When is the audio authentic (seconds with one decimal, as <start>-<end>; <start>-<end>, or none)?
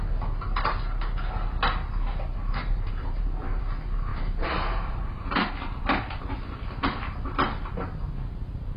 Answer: 0.0-2.6; 3.6-4.1; 5.5-8.8